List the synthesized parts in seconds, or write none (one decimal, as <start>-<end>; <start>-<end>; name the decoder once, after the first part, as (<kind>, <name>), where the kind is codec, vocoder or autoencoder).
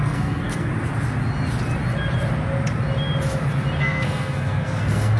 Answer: 0.0-0.7 (codec, SNAC); 3.8-5.2